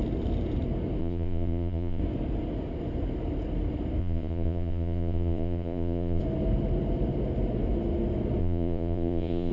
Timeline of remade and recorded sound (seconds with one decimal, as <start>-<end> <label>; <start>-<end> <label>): 0.0-1.0 recorded; 1.0-2.0 remade; 2.0-4.0 recorded; 4.0-6.2 remade; 6.2-8.4 recorded; 8.4-9.5 remade